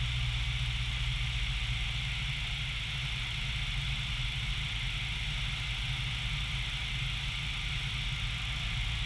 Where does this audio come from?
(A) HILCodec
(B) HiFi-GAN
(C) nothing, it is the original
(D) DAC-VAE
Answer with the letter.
C